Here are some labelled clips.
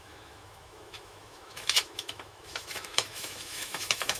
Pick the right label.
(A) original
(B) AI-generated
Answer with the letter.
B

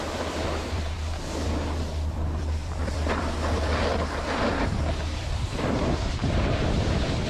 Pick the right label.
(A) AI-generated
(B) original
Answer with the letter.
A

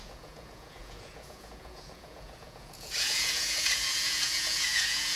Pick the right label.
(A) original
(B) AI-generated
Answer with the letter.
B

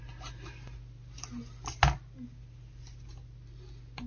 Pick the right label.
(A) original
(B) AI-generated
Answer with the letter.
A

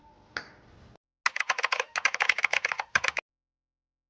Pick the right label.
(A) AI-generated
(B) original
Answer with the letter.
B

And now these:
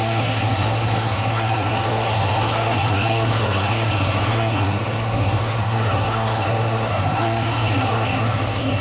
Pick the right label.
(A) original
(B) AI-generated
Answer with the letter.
B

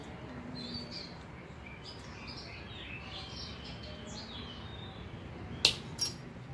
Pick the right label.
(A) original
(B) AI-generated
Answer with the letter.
A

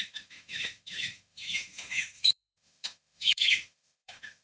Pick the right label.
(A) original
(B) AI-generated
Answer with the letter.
B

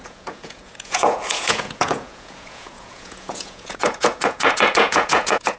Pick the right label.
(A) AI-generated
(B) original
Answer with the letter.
A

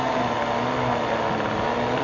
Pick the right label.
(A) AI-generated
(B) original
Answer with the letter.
B